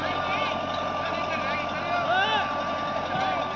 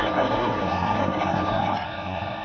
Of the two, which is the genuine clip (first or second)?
first